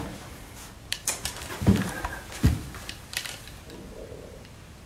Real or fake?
fake